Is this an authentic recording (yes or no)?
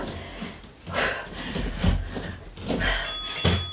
yes